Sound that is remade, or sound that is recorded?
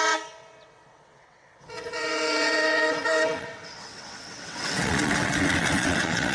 remade